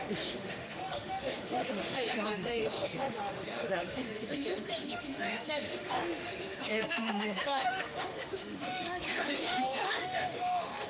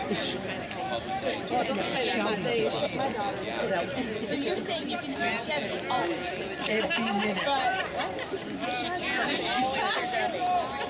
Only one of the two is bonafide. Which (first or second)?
second